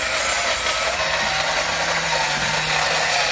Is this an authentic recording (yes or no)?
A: yes